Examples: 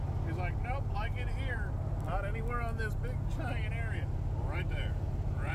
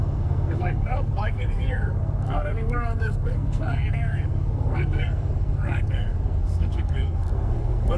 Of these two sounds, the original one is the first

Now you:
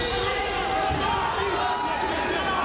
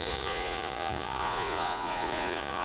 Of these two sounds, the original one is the first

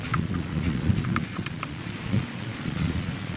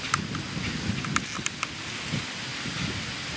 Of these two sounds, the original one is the second